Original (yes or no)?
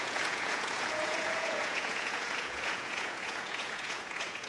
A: no